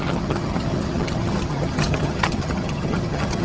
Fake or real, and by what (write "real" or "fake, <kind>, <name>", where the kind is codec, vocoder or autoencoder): fake, vocoder, HiFi-GAN